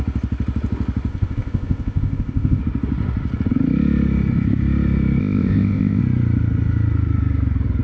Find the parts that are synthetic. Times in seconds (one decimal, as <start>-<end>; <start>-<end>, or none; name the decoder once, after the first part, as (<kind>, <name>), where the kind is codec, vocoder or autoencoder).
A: 1.1-2.6 (codec, ZipCodec); 5.2-6.0

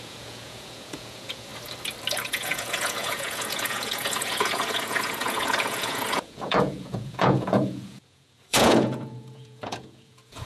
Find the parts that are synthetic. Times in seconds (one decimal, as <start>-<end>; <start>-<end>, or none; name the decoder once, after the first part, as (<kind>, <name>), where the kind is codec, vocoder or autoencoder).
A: 0.0-1.5 (vocoder, Vocos); 2.1-10.5

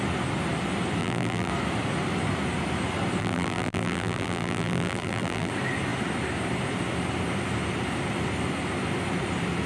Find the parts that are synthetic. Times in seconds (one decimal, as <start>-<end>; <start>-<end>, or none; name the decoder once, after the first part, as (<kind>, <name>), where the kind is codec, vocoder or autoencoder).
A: 1.0-1.5 (vocoder, BigVGAN v2); 3.2-5.5